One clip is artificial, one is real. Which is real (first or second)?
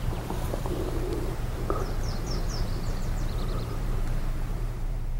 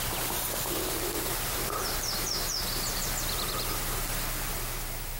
second